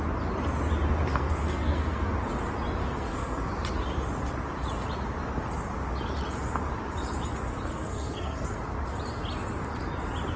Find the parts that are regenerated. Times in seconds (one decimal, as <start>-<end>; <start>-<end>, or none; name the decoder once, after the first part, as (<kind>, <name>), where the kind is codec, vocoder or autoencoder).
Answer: 1.1-2.1 (codec, SNAC); 2.8-3.5; 7.7-8.6